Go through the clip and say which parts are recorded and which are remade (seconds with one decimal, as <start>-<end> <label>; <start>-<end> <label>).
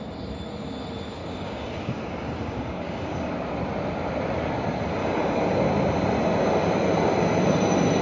0.0-1.2 recorded; 1.2-3.3 remade; 3.3-5.0 recorded; 5.0-5.6 remade; 5.6-8.0 recorded